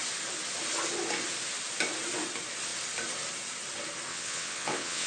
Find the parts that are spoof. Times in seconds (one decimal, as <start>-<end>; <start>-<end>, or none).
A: 4.1-5.1

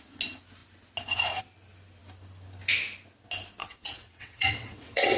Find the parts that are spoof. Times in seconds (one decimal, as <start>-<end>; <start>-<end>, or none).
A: 3.6-5.2